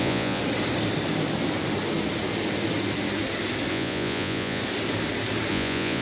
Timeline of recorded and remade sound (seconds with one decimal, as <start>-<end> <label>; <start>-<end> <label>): 0.0-0.4 remade; 0.4-3.7 recorded; 3.7-4.6 remade; 4.6-5.5 recorded; 5.5-6.0 remade

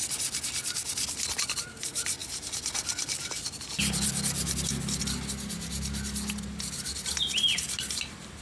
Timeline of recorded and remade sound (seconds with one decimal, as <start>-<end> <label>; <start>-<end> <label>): 0.0-8.4 recorded

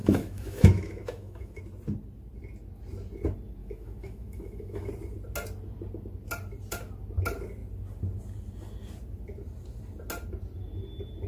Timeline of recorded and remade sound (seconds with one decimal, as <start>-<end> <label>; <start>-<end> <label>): 0.0-1.6 remade; 1.6-3.6 recorded; 3.6-4.9 remade; 4.9-11.3 recorded

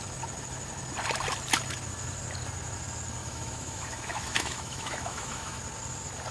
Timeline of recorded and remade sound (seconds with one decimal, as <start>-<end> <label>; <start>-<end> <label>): 0.0-3.2 recorded; 3.2-5.6 remade; 5.6-6.3 recorded

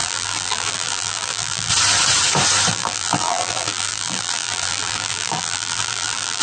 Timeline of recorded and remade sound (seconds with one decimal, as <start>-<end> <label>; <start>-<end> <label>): 0.0-1.7 remade; 1.7-2.7 recorded; 2.7-6.4 remade

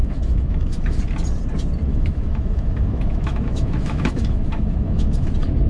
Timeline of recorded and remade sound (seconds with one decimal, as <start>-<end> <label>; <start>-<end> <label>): 0.0-1.0 remade; 1.0-1.9 recorded; 1.9-5.3 remade; 5.3-5.7 recorded

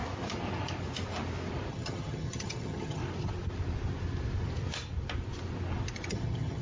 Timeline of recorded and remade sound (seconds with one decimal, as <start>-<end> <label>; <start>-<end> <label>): 0.0-1.7 recorded; 1.7-3.0 remade; 3.0-6.1 recorded; 6.1-6.6 remade

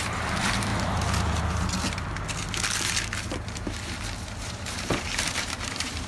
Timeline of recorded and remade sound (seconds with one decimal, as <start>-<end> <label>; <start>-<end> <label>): 0.0-0.7 remade; 0.7-4.4 recorded; 4.4-6.1 remade